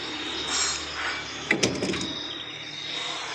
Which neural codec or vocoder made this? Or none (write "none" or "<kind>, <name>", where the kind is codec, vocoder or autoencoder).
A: none